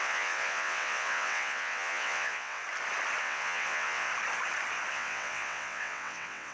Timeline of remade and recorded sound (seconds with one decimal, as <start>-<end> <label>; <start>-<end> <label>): 0.0-2.6 remade; 2.6-3.2 recorded; 3.2-4.1 remade; 4.1-4.9 recorded; 4.9-6.5 remade